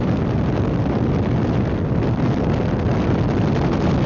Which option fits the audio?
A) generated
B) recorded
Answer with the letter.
B